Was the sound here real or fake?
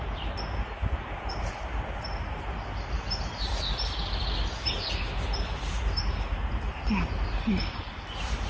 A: real